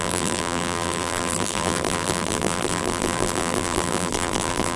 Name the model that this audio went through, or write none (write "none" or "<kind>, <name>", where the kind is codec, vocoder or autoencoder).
vocoder, BigVGAN v2